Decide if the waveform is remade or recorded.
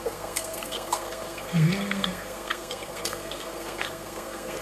remade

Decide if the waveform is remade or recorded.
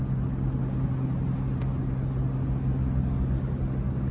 recorded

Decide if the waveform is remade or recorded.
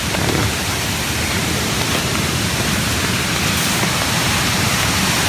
remade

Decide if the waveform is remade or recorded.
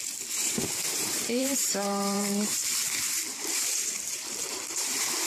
remade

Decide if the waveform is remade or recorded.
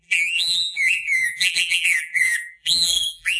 remade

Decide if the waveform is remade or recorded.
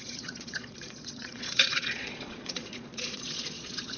remade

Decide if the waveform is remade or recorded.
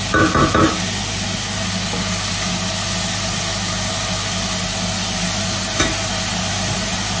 recorded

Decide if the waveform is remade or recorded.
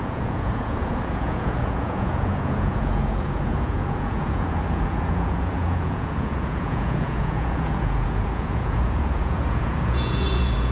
remade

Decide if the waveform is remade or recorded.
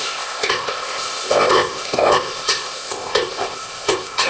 remade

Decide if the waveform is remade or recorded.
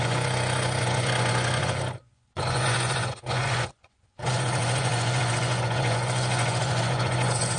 remade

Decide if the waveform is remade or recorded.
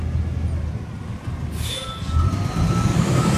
recorded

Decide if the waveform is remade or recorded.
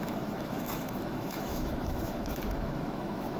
remade